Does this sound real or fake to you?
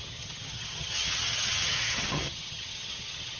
fake